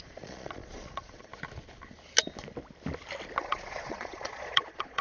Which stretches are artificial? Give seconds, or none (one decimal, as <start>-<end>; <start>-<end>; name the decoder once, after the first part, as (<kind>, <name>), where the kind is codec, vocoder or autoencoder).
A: 0.0-1.3 (vocoder, Vocos); 3.4-5.0